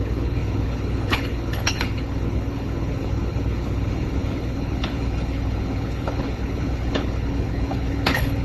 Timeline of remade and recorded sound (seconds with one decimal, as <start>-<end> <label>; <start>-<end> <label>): 0.0-8.4 remade